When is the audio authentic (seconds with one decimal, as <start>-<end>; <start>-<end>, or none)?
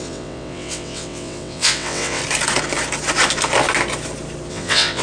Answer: 2.2-4.5